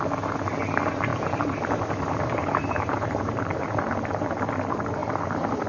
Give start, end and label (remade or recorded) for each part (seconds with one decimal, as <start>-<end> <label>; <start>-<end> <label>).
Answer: 0.0-1.1 recorded; 1.1-4.5 remade; 4.5-5.0 recorded; 5.0-5.7 remade